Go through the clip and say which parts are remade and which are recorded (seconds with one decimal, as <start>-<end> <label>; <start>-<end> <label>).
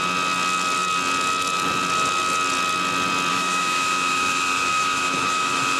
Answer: 0.0-3.3 recorded; 3.3-5.8 remade